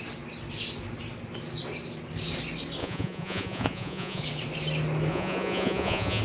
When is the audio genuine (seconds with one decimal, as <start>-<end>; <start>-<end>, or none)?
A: 0.0-2.8; 4.2-5.1